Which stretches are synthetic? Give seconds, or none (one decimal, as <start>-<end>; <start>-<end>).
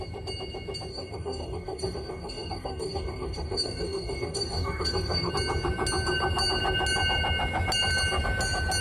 0.9-5.3